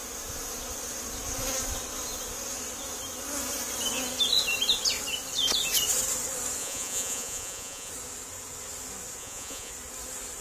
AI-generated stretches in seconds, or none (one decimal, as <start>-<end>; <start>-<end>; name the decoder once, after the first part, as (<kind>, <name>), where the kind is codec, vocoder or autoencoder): 6.6-7.9 (vocoder, Vocos); 9.2-9.7